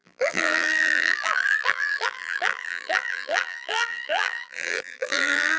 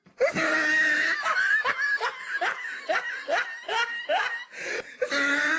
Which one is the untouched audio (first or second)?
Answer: second